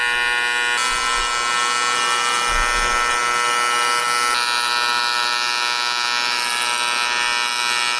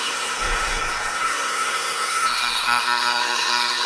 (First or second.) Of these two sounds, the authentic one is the first